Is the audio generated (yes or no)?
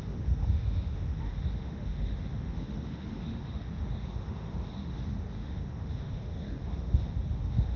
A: yes